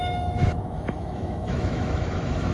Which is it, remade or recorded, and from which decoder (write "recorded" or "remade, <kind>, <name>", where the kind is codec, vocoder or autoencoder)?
remade, autoencoder, DAC-VAE